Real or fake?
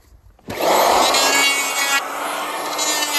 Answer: real